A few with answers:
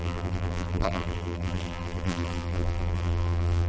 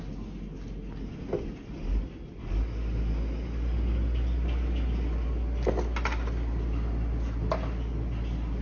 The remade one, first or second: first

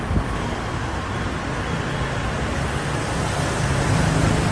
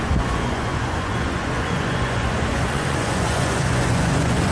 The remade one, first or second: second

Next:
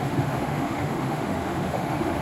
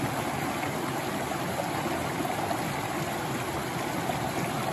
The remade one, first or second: first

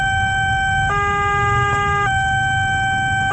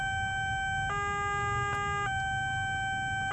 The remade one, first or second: first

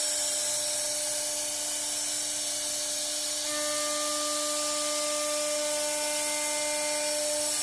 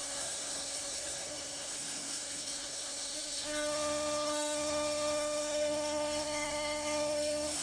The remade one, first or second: second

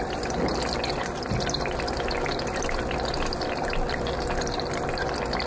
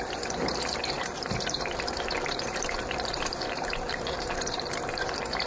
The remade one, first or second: second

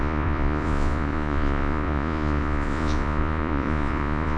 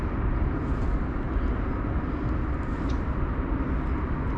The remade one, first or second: first